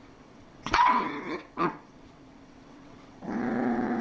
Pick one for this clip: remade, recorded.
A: remade